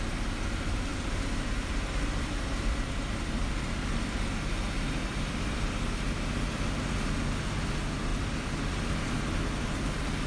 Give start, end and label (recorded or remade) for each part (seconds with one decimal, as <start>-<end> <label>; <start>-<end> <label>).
0.0-0.9 recorded; 0.9-3.9 remade; 3.9-5.0 recorded; 5.0-5.6 remade; 5.6-8.1 recorded; 8.1-8.7 remade; 8.7-10.3 recorded